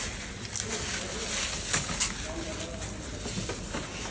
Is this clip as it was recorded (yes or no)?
yes